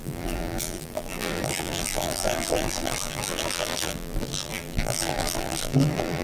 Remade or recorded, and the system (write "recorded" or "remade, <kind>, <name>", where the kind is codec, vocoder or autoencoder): remade, vocoder, BigVGAN v2